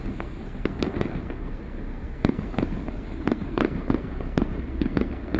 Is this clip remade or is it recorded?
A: remade